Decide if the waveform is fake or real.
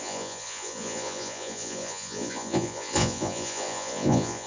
fake